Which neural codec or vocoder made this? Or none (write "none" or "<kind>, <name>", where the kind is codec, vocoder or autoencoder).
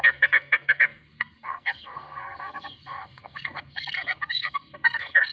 codec, SNAC